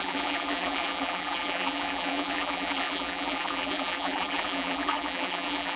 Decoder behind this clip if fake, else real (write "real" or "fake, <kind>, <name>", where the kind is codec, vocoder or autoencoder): fake, vocoder, BigVGAN v2